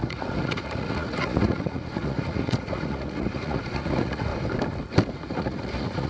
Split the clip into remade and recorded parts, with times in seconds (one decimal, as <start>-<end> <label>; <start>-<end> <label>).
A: 0.0-4.3 remade; 4.3-5.1 recorded; 5.1-6.1 remade